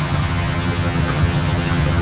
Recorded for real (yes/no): no